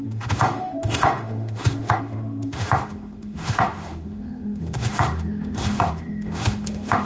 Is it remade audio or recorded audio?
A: remade